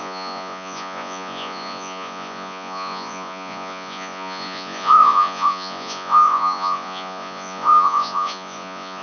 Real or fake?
fake